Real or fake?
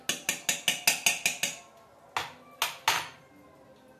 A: real